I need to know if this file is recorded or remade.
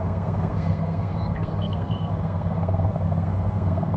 remade